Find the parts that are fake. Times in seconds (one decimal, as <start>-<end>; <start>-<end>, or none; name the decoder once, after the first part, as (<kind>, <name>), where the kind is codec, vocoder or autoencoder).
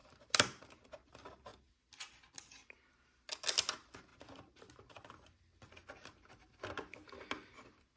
0.0-1.1 (vocoder, BigVGAN v2); 1.5-3.0; 4.1-5.7